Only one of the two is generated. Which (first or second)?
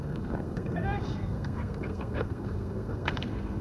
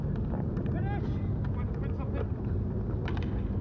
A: first